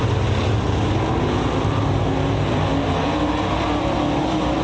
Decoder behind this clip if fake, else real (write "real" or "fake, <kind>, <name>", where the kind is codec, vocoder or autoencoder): real